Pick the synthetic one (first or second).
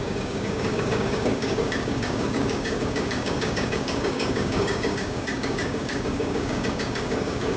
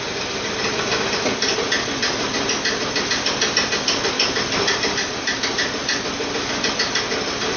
first